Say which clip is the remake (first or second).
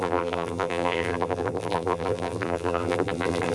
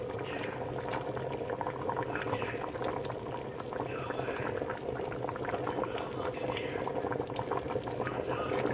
first